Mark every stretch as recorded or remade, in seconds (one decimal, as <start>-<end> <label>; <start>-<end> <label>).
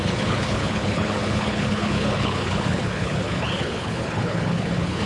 0.0-5.1 remade